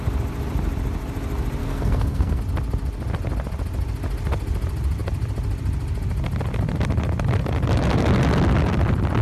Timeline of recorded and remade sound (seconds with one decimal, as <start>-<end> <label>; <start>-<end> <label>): 0.0-1.6 recorded; 1.6-2.4 remade; 2.4-9.2 recorded